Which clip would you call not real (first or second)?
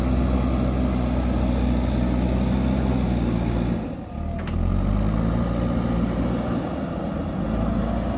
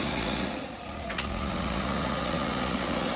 second